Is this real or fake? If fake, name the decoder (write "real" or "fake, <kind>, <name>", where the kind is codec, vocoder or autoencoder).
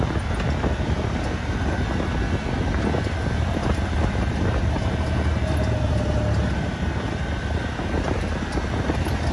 real